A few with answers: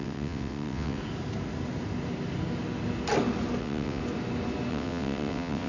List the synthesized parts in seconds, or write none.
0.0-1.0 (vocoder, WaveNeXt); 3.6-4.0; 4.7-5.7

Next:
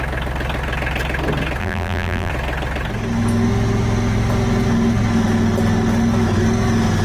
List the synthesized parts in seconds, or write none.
1.6-2.3 (vocoder, BigVGAN v2)

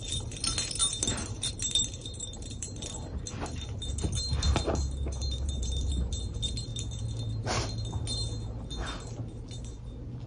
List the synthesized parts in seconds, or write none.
0.8-3.2 (vocoder, BigVGAN v2); 5.2-5.9

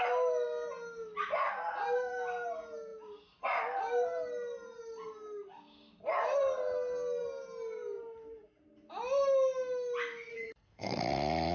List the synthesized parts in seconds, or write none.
10.3-11.0 (codec, SNAC)

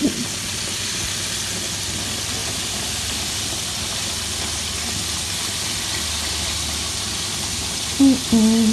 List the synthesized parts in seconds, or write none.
none

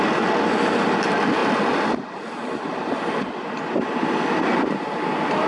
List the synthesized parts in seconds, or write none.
none

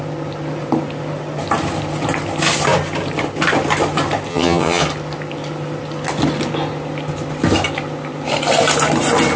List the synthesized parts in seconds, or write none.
4.3-4.8 (vocoder, HiFi-GAN)